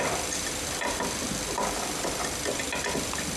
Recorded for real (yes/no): yes